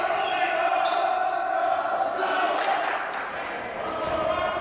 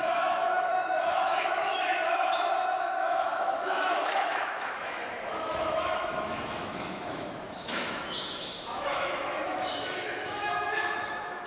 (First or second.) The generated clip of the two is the second